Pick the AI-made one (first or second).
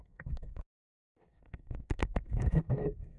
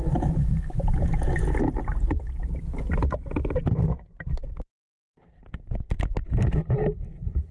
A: first